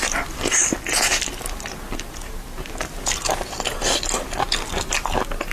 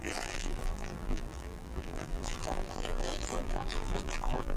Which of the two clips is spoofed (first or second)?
second